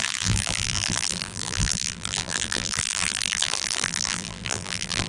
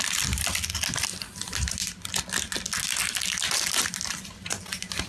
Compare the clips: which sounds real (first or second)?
second